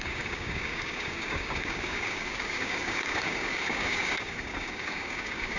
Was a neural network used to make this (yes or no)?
yes